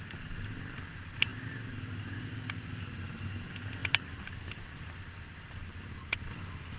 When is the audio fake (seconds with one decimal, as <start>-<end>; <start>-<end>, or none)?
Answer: 3.8-6.3